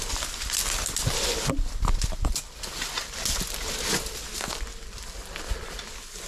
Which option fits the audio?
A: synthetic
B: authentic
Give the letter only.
B